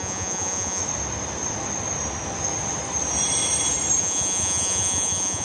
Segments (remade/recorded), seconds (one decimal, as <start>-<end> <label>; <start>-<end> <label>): 0.0-0.8 remade; 0.8-4.0 recorded; 4.0-5.4 remade